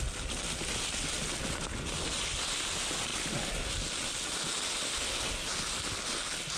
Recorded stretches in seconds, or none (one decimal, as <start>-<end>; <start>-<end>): 0.0-6.6